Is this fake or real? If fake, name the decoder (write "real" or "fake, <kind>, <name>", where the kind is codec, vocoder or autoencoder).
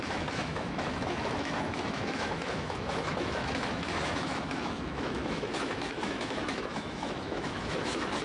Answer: fake, autoencoder, DAC-VAE